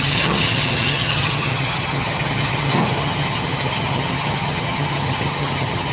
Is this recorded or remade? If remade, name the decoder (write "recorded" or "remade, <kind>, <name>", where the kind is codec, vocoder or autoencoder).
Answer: remade, vocoder, HiFi-GAN